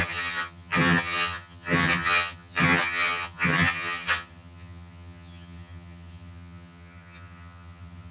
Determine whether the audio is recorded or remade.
remade